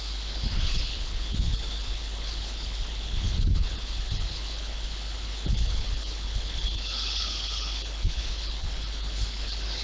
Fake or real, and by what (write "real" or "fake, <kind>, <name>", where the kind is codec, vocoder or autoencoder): fake, codec, HILCodec